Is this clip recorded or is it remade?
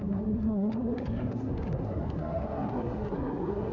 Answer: remade